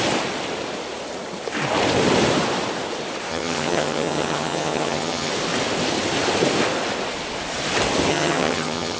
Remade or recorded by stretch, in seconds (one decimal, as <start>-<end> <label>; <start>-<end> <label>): 0.0-3.3 recorded; 3.3-5.3 remade; 5.3-8.1 recorded; 8.1-9.0 remade